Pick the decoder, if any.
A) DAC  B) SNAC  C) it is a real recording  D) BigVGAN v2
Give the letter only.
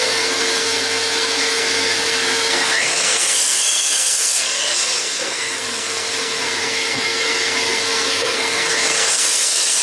B